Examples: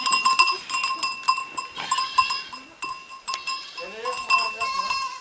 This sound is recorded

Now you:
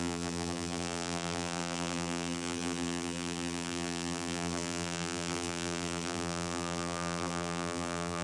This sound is remade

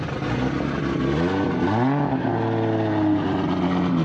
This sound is recorded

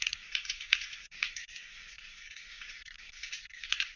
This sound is remade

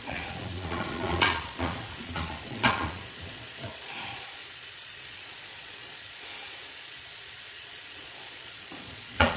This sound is remade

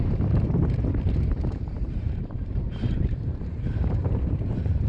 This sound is remade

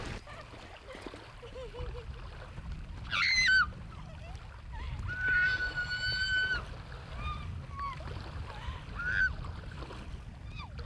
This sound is recorded